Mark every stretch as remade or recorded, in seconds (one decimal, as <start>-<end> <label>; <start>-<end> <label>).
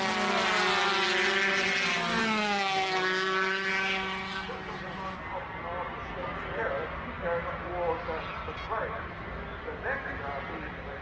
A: 0.0-2.2 recorded; 2.2-3.7 remade; 3.7-11.0 recorded